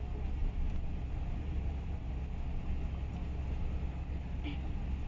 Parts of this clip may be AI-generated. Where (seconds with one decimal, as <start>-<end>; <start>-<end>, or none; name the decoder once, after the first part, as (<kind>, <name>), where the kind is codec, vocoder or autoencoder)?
0.4-2.1 (vocoder, BigVGAN v2)